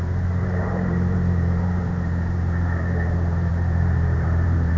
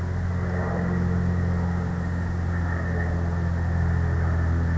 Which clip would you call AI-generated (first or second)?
first